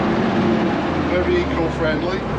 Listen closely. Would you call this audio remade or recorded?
recorded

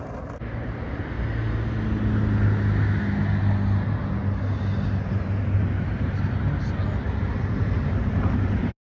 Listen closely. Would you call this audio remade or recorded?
recorded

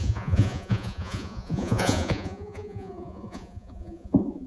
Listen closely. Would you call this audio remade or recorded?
remade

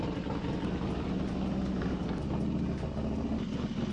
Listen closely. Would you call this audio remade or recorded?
recorded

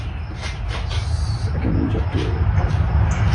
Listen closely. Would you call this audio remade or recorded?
recorded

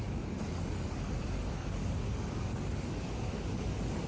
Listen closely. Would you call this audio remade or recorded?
remade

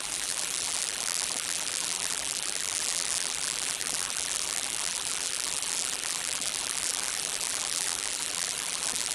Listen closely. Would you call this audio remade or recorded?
remade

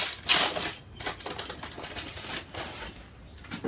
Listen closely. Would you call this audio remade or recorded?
recorded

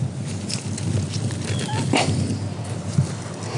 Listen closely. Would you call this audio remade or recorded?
recorded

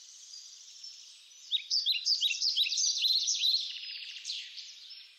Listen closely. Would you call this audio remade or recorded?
remade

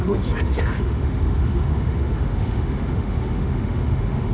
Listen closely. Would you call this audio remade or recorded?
remade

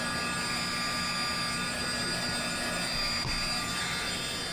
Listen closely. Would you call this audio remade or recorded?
recorded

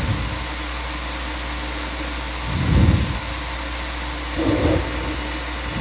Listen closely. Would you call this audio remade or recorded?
recorded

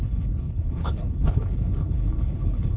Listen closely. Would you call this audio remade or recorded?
remade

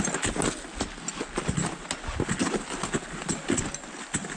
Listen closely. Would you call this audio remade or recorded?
recorded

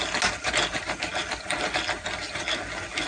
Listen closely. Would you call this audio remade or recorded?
recorded